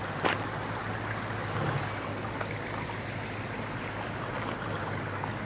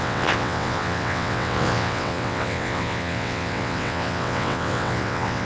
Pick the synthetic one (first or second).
second